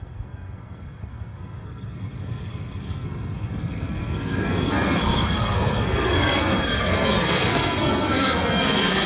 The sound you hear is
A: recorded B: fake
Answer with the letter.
B